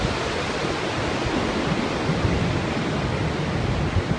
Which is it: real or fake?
real